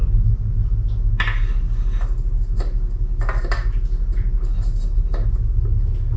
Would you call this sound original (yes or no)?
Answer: yes